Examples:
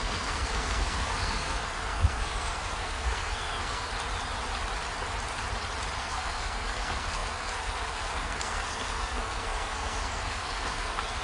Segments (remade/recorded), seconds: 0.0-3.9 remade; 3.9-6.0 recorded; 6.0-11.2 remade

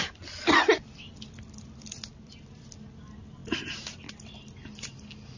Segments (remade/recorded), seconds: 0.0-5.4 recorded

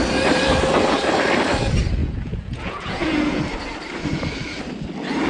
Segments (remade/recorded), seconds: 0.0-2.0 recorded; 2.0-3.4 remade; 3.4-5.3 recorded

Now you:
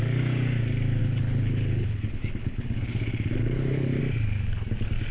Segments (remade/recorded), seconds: 0.0-1.0 recorded; 1.0-4.0 remade; 4.0-5.1 recorded